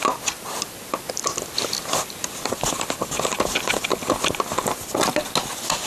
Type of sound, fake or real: real